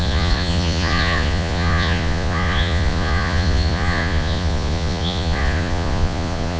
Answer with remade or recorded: remade